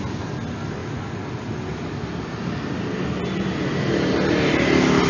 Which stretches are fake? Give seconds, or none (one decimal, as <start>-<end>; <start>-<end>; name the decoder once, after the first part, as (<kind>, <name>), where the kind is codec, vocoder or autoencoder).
none